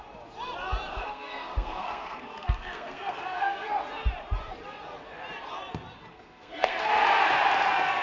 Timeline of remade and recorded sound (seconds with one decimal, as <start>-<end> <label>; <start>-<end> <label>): 0.0-0.9 recorded; 0.9-3.7 remade; 3.7-6.1 recorded; 6.1-6.9 remade; 6.9-8.0 recorded